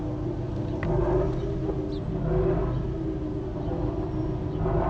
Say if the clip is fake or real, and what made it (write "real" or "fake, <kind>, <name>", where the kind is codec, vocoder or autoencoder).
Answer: real